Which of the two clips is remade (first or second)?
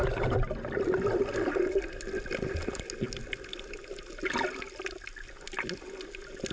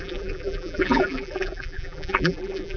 second